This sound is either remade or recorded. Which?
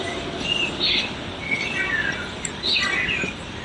recorded